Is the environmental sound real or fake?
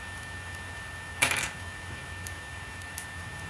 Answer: fake